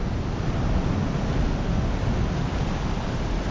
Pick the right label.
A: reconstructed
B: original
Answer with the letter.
B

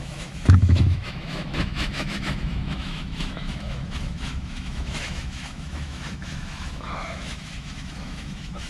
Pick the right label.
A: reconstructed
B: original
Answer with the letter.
A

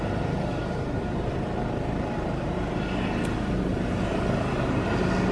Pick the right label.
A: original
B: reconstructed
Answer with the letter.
A